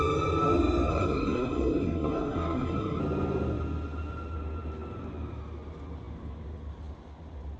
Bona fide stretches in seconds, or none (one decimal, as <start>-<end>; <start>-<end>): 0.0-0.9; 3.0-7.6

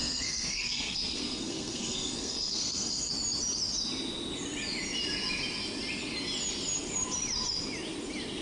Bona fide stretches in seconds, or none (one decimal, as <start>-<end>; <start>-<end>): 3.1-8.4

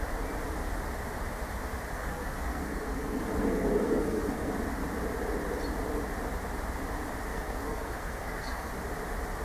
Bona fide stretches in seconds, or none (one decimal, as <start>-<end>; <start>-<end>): 0.0-1.9; 4.5-7.3; 8.7-9.4

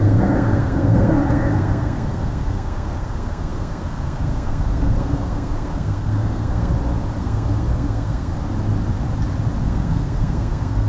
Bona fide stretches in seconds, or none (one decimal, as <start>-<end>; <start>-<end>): 6.7-7.2; 8.3-9.6

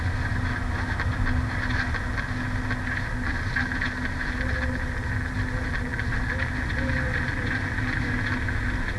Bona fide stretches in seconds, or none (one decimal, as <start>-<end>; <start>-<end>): 0.0-9.0